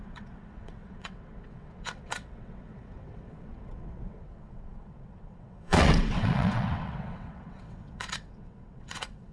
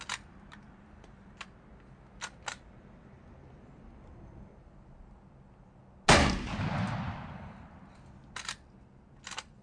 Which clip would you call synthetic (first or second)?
first